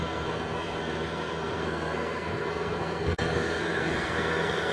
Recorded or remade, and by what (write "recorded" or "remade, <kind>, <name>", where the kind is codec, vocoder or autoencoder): remade, codec, SNAC